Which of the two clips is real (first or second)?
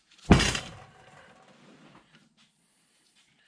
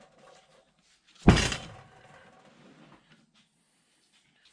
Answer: second